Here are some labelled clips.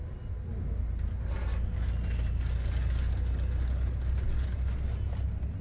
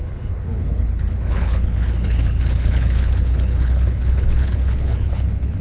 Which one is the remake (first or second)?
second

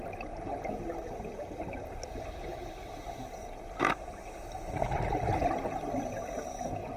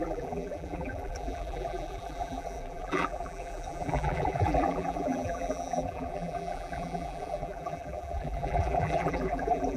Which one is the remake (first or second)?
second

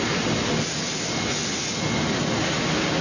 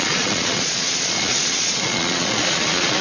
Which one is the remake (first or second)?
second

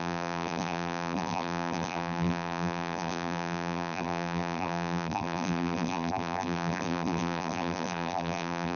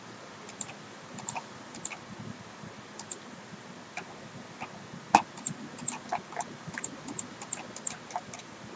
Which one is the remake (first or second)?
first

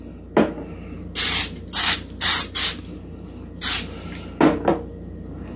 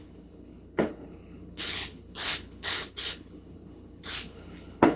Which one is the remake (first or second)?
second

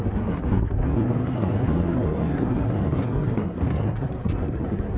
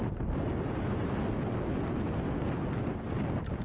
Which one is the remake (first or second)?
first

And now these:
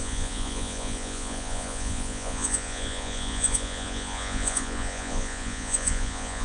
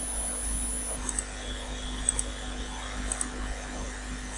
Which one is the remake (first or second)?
first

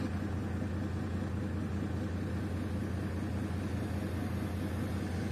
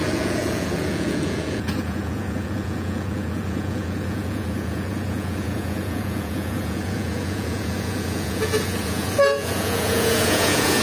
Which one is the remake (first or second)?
second